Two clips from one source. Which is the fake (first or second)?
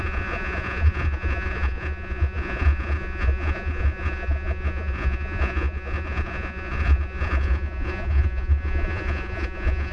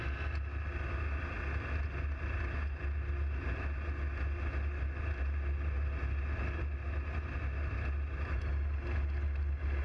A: first